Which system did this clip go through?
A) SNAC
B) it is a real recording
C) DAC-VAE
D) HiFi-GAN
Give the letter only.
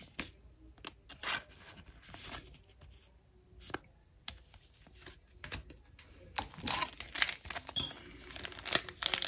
B